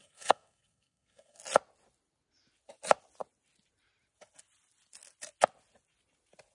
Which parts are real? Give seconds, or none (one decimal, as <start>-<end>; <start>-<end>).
1.4-6.5